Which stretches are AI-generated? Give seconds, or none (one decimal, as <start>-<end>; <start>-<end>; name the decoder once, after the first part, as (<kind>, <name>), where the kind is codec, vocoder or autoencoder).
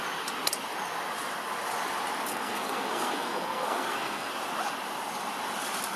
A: 2.3-4.3 (codec, SNAC)